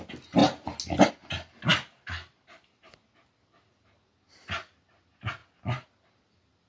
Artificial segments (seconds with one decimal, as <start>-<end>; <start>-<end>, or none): none